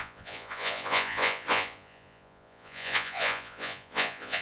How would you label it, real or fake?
fake